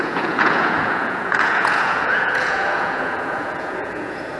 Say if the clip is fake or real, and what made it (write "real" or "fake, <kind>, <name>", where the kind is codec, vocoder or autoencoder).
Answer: fake, vocoder, Vocos